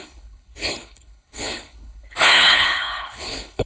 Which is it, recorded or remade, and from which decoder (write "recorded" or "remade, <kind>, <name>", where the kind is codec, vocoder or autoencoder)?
remade, codec, HILCodec